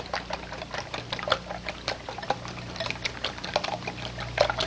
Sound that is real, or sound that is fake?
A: real